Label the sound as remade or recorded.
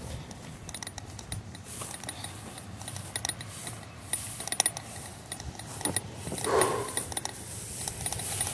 recorded